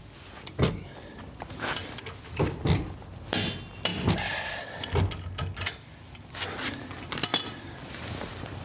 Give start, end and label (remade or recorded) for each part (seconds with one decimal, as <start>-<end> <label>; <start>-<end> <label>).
0.0-8.6 recorded